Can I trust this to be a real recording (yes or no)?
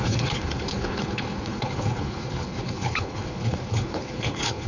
no